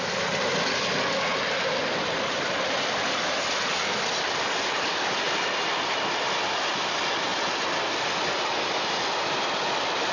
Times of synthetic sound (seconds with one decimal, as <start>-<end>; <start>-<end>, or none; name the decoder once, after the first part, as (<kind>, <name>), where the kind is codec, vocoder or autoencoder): 1.3-4.7 (vocoder, BigVGAN v2)